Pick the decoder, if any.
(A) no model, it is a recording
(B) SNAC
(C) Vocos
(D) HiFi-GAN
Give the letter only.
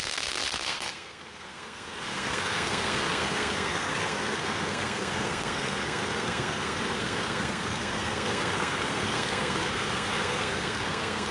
B